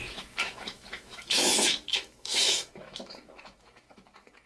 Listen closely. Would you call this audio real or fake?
fake